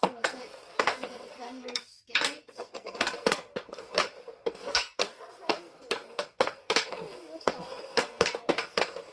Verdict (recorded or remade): remade